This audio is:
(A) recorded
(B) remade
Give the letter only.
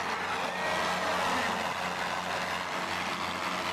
A